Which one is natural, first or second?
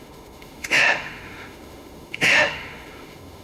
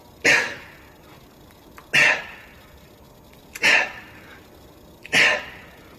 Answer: second